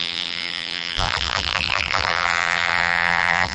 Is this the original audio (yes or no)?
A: no